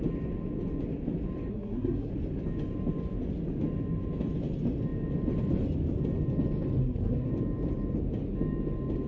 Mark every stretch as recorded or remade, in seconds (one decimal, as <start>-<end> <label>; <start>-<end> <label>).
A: 0.0-1.5 recorded; 1.5-2.1 remade; 2.1-6.8 recorded; 6.8-7.3 remade; 7.3-9.1 recorded